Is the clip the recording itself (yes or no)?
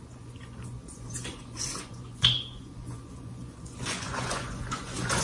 no